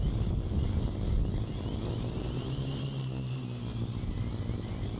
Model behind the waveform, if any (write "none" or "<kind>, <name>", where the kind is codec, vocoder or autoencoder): none